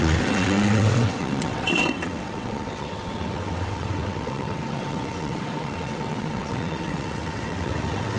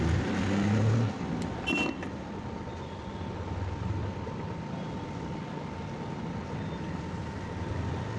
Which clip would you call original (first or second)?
second